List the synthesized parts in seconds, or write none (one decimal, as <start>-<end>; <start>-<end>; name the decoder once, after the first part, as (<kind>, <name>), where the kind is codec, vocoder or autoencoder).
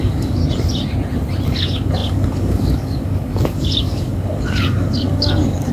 0.0-0.4 (codec, DAC); 1.5-5.7